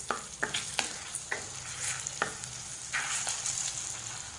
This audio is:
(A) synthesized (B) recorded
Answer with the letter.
B